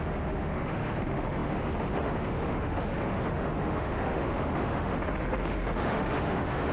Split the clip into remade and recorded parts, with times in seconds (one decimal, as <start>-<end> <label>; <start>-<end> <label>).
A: 0.0-6.7 remade